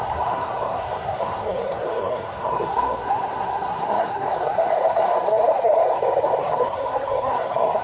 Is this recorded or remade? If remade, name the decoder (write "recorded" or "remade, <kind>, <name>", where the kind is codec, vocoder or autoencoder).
remade, codec, SNAC